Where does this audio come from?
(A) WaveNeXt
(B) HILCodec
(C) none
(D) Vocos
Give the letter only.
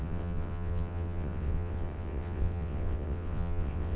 A